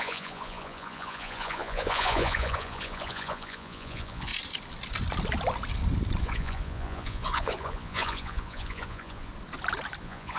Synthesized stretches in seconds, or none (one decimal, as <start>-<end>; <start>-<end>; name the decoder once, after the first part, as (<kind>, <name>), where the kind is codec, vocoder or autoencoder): 0.0-4.3 (vocoder, Vocos); 6.2-9.3; 10.0-10.4